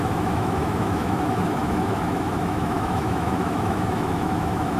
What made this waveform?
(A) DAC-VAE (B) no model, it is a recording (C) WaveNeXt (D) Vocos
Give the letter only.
A